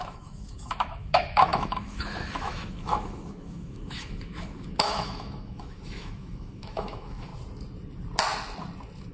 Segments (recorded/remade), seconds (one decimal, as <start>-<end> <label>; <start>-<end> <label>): 0.0-7.3 remade; 7.3-9.1 recorded